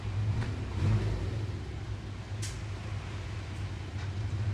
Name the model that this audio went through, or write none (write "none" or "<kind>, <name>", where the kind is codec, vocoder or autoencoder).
none